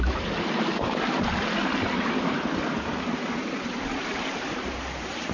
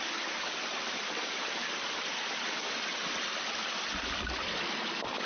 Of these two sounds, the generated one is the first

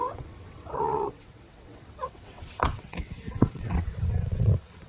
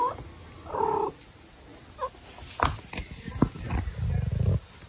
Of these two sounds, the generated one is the first